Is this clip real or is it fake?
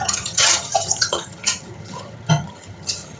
fake